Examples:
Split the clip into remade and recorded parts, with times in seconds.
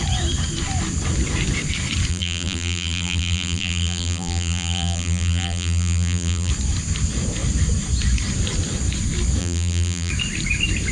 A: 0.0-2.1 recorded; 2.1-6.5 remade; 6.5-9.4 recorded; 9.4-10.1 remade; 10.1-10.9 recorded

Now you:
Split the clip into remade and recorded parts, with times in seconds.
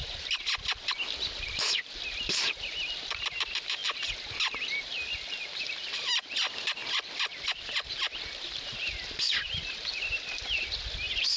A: 0.0-3.8 remade; 3.8-5.6 recorded; 5.6-6.8 remade; 6.8-8.4 recorded; 8.4-11.4 remade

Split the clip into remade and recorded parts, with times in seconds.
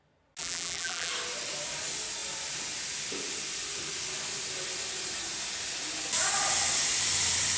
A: 0.0-0.4 recorded; 0.4-1.1 remade; 1.1-7.6 recorded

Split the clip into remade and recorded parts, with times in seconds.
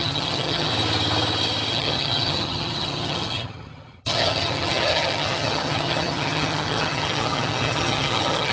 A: 0.0-0.7 remade; 0.7-1.7 recorded; 1.7-8.5 remade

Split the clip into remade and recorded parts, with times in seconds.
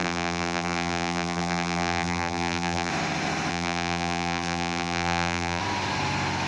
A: 0.0-2.9 remade; 2.9-3.5 recorded; 3.5-5.6 remade; 5.6-6.5 recorded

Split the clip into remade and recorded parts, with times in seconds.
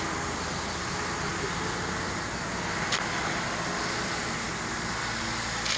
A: 0.0-5.8 recorded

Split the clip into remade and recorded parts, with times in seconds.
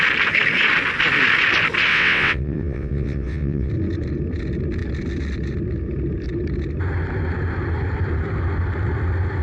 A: 0.0-1.9 recorded; 1.9-3.7 remade; 3.7-9.4 recorded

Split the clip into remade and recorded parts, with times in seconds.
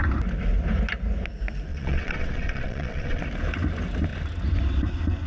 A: 0.0-1.7 recorded; 1.7-3.2 remade; 3.2-5.3 recorded